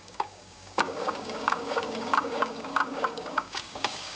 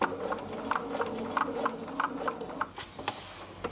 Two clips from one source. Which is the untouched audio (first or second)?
second